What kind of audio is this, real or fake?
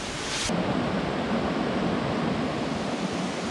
real